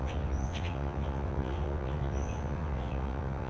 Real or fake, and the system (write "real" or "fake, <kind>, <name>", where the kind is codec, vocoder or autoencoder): fake, vocoder, WaveNeXt